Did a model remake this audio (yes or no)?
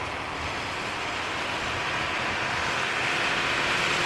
no